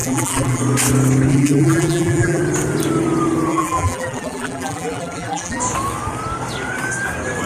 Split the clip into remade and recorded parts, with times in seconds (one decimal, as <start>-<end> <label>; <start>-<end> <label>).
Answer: 0.0-0.6 remade; 0.6-1.3 recorded; 1.3-2.4 remade; 2.4-3.5 recorded; 3.5-5.6 remade; 5.6-7.5 recorded